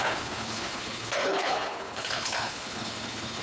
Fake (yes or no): yes